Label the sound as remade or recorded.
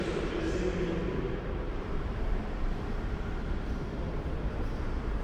remade